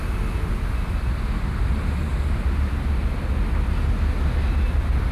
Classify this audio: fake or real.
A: real